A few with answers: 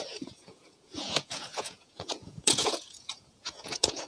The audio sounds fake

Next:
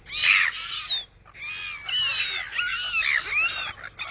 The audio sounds real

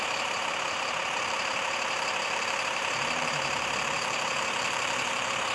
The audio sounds fake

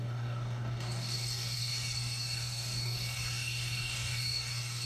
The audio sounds fake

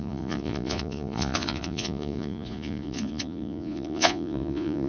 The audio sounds fake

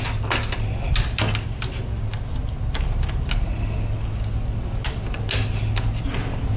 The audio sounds real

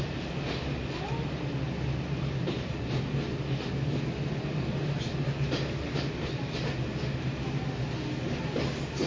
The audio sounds real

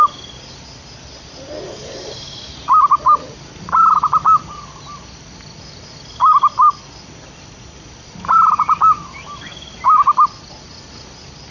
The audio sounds real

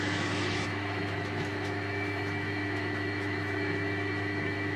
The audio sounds fake